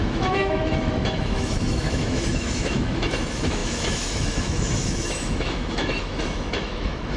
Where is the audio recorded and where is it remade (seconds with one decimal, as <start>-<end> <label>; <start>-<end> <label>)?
0.0-7.2 remade